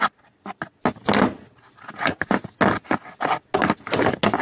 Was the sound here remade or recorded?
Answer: recorded